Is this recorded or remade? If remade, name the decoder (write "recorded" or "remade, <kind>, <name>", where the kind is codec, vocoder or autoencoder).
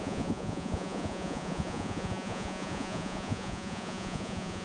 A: remade, vocoder, Vocos